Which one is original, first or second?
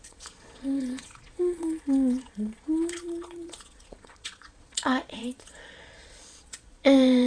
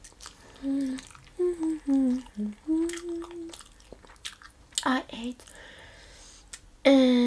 second